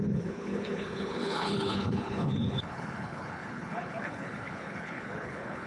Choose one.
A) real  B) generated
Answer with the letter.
B